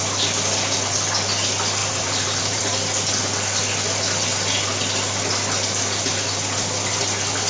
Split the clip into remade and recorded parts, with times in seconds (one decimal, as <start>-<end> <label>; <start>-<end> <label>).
0.0-1.8 recorded; 1.8-2.6 remade; 2.6-7.5 recorded